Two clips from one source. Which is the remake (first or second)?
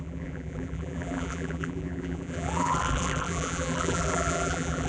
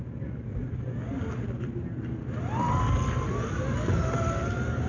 first